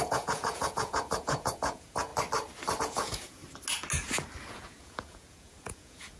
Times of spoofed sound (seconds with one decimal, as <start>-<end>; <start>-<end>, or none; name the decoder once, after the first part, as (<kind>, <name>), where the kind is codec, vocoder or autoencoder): 0.0-2.1 (vocoder, Vocos); 2.8-3.4; 4.5-6.2